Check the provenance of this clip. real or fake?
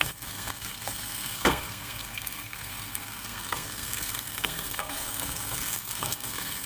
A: fake